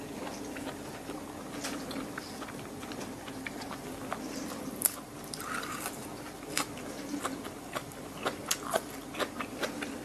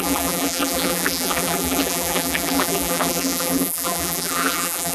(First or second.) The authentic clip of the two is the first